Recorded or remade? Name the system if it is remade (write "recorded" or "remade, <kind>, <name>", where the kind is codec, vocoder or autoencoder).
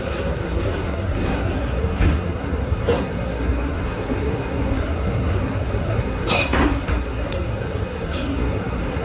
remade, codec, SNAC